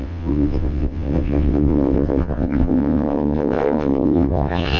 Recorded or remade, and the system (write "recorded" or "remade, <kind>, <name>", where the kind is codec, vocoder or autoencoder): remade, vocoder, WaveNeXt